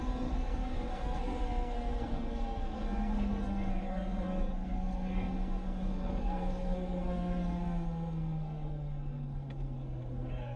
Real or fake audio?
fake